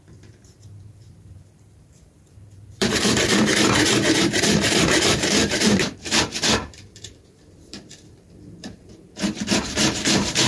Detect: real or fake fake